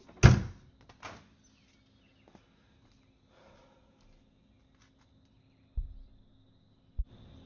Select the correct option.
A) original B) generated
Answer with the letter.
A